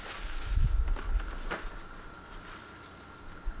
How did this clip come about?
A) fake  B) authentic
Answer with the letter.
B